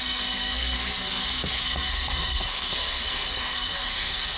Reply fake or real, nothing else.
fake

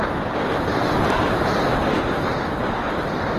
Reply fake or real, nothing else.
real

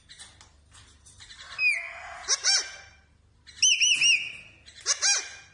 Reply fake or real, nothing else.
real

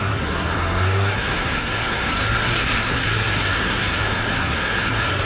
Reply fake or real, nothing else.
fake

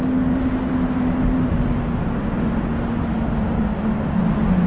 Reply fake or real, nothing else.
real